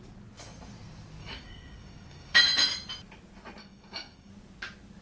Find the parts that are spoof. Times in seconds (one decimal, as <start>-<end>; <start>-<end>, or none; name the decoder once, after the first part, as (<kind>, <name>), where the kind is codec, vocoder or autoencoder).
1.2-2.4 (codec, DAC); 3.6-4.3